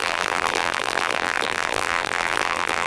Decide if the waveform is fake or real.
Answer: fake